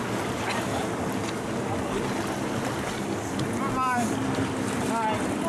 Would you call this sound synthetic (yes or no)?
no